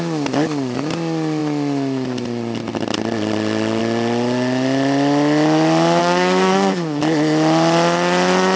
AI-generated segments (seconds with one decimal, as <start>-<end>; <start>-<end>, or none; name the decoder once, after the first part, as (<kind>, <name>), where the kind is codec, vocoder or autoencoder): 6.0-7.0 (codec, SNAC)